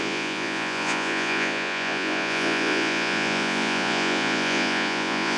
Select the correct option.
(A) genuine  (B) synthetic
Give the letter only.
B